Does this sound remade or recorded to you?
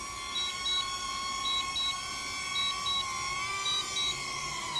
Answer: recorded